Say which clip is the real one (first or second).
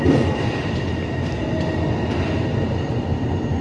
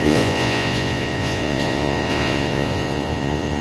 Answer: first